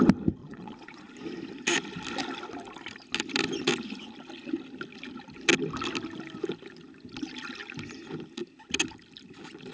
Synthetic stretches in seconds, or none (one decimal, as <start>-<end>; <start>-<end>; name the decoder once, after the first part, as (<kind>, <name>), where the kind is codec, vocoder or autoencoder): 0.4-1.1 (vocoder, Vocos)